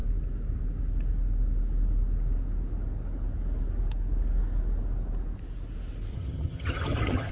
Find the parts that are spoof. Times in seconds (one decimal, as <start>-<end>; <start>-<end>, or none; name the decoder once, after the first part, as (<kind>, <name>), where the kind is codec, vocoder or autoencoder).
6.1-7.3 (vocoder, HiFi-GAN)